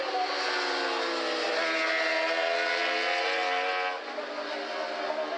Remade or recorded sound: recorded